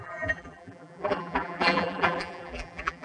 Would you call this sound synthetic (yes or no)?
yes